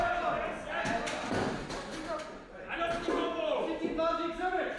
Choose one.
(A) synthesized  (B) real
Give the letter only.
B